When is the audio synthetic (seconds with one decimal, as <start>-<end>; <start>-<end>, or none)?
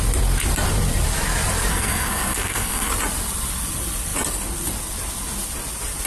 1.7-2.9